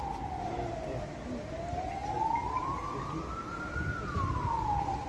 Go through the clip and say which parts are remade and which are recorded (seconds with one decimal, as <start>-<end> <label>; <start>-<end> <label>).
0.0-5.1 recorded